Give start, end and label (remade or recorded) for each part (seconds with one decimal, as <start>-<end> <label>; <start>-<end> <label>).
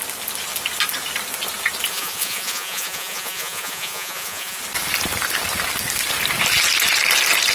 0.0-1.9 recorded; 1.9-4.6 remade; 4.6-7.5 recorded